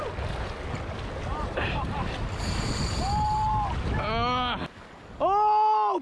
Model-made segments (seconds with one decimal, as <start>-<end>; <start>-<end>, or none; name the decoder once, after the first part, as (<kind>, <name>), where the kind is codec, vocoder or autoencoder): 1.3-2.7 (vocoder, BigVGAN v2)